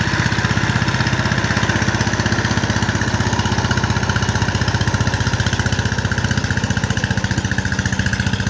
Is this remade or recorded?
recorded